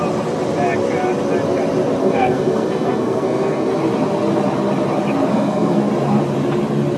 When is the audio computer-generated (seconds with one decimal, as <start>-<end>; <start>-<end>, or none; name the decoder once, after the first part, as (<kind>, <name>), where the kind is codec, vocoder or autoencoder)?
2.0-3.7 (codec, SNAC); 5.3-5.9